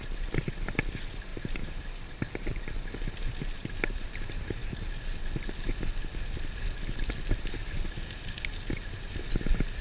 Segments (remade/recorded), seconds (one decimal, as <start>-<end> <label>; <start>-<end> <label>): 0.0-1.3 recorded; 1.3-1.8 remade; 1.8-9.8 recorded